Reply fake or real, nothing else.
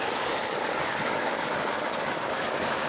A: fake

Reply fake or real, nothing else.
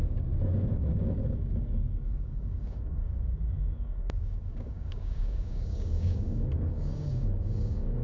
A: fake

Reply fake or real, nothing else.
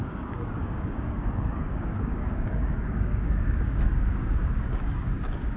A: fake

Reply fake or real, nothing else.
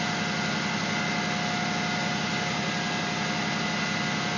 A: real